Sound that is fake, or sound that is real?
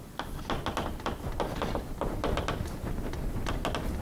real